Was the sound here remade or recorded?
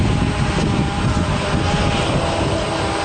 recorded